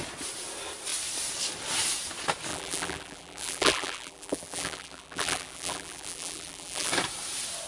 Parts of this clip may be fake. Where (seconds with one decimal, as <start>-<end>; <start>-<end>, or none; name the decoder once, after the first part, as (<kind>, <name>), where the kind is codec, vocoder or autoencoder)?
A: 2.5-6.9 (vocoder, BigVGAN v2)